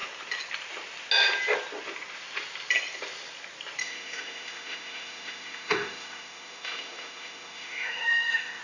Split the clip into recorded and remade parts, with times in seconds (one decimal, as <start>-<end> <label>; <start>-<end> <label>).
0.0-3.8 recorded; 3.8-8.6 remade